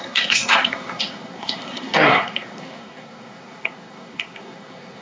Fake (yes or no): yes